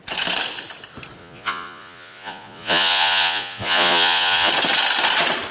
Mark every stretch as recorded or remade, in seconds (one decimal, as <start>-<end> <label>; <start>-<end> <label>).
0.0-1.2 recorded; 1.2-4.5 remade; 4.5-5.5 recorded